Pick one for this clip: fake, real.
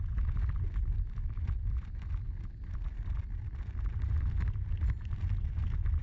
real